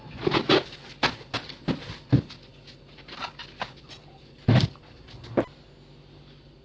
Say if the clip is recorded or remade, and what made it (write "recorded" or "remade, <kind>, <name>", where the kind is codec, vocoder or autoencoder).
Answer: recorded